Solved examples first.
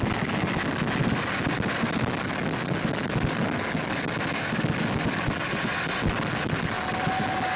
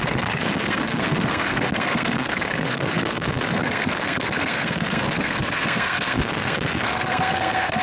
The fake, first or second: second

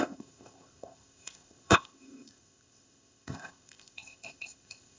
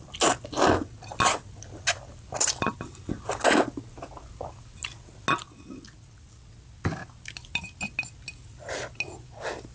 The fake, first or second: first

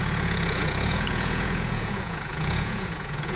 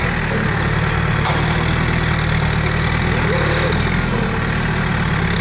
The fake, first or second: first